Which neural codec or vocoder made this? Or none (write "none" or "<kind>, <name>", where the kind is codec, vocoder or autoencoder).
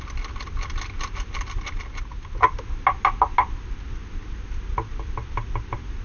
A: none